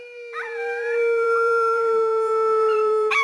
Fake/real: fake